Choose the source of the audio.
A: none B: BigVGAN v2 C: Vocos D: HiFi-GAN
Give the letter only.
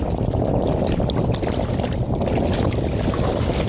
A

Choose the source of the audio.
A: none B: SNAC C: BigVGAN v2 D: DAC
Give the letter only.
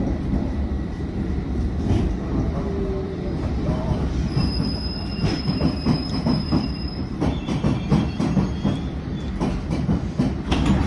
C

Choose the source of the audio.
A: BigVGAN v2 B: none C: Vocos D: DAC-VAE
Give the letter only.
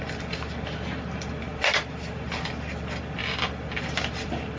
A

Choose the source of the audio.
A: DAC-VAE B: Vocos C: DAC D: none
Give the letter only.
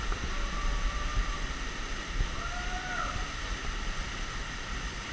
D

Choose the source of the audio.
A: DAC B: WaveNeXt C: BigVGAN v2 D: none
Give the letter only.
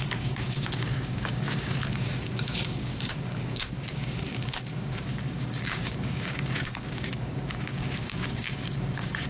A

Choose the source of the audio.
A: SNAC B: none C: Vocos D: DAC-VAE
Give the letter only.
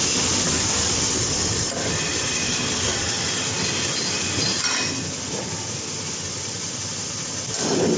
B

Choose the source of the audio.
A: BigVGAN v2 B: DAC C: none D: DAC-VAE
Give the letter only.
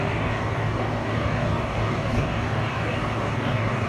B